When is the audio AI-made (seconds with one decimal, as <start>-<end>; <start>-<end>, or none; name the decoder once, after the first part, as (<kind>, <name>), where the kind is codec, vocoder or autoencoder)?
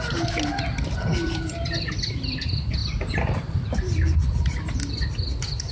none